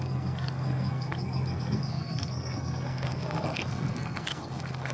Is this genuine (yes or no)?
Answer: no